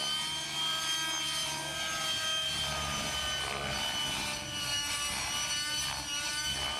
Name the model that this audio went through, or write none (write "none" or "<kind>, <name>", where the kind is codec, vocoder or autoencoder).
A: none